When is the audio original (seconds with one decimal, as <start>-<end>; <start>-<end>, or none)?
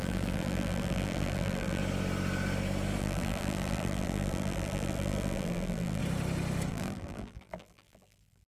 1.8-3.0; 6.0-6.7